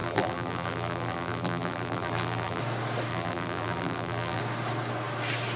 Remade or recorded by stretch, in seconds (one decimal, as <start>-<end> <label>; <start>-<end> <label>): 0.0-2.6 remade; 2.6-3.1 recorded; 3.1-4.4 remade; 4.4-5.6 recorded